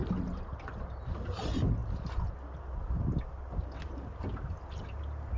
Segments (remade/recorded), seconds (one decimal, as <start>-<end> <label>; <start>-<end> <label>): 0.0-5.4 recorded